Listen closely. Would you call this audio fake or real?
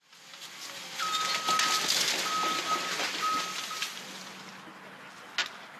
real